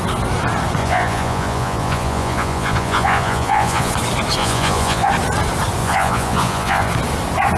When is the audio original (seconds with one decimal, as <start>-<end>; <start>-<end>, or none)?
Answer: 0.0-0.8; 3.9-4.4; 5.1-5.8; 6.9-7.6